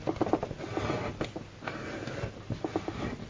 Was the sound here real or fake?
real